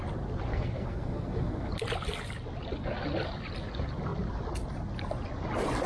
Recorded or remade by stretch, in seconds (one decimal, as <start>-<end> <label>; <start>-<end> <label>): 0.0-0.5 recorded; 0.5-1.7 remade; 1.7-5.9 recorded